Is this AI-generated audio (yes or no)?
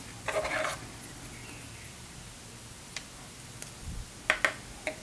no